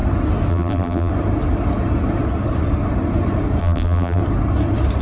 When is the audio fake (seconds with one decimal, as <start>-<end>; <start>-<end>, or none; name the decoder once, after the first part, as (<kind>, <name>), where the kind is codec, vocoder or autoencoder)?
0.5-1.1 (vocoder, BigVGAN v2); 3.6-4.2